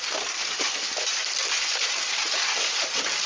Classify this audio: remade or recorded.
recorded